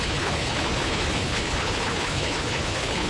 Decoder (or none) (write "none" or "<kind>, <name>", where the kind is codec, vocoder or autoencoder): codec, HILCodec